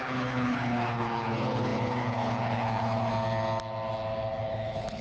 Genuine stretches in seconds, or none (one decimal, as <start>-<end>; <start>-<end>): 3.1-4.4